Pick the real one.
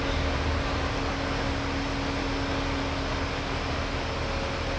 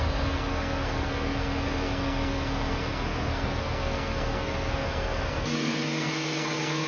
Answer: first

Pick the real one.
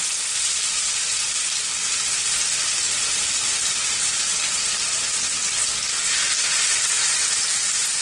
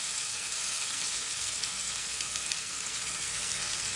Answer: first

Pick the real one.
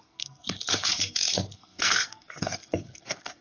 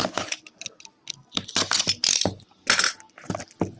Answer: second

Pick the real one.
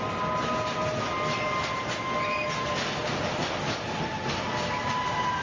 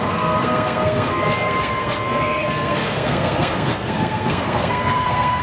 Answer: first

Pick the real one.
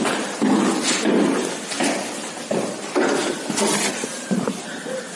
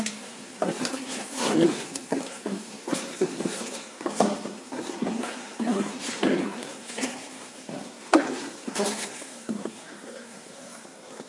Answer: first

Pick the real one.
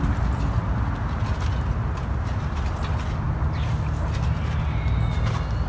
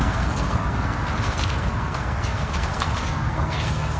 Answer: first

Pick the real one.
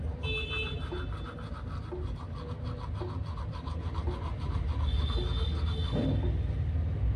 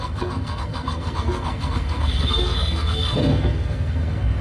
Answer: first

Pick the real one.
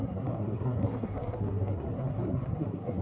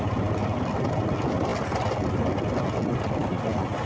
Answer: second